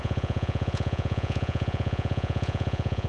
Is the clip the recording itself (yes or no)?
no